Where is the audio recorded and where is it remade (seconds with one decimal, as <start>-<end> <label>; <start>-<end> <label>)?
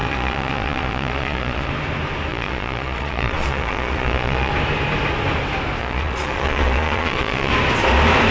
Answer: 0.0-1.7 remade; 1.7-2.3 recorded; 2.3-4.5 remade; 4.5-5.8 recorded; 5.8-7.5 remade; 7.5-8.3 recorded